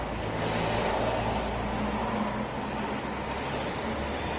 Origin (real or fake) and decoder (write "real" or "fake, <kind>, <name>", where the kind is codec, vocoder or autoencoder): real